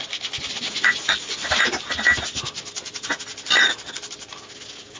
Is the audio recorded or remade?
recorded